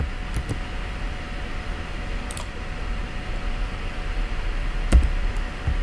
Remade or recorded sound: remade